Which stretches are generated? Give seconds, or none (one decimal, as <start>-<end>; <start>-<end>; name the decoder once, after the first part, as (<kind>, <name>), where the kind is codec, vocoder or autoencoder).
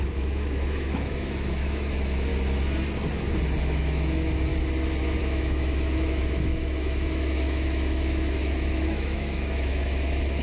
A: 0.0-2.3 (autoencoder, DAC-VAE); 3.6-4.5; 5.2-10.4